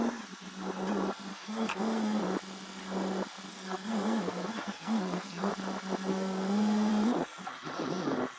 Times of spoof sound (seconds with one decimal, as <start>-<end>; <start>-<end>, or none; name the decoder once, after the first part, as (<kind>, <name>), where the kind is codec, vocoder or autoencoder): 1.3-2.2 (codec, SNAC); 3.5-5.5; 6.1-6.9